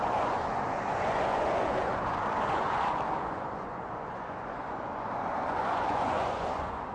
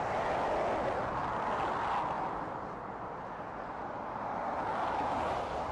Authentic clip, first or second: second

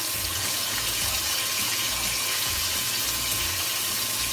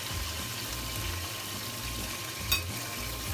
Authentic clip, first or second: second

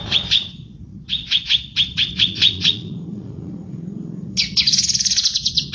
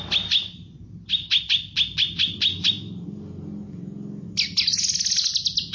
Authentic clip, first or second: second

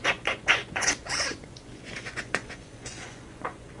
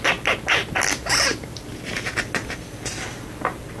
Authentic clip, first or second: second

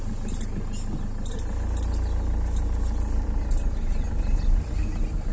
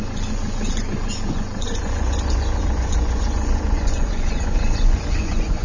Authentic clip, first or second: first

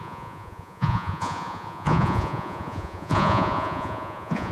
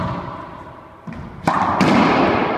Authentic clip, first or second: second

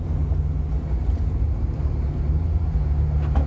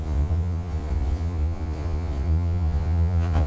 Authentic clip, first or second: first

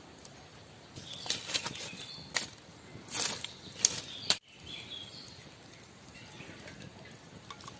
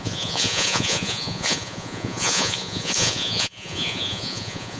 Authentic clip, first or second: first